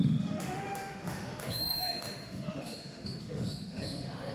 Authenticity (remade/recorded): remade